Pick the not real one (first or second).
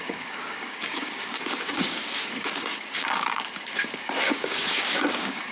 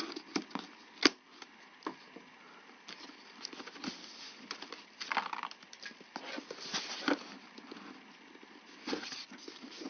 first